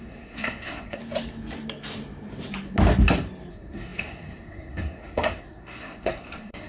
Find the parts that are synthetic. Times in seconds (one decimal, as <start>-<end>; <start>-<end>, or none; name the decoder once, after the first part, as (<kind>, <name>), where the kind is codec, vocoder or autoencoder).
0.0-1.0 (codec, SNAC); 3.5-6.7